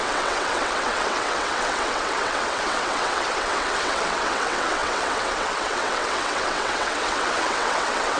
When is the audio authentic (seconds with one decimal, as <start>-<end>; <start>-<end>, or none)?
none